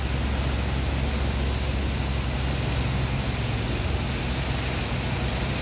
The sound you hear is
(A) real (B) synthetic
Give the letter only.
A